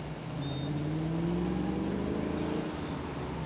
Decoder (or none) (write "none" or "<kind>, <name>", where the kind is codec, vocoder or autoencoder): none